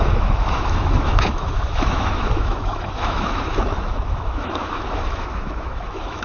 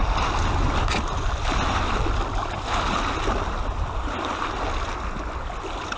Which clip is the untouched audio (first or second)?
second